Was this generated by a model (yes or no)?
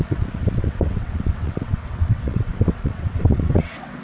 yes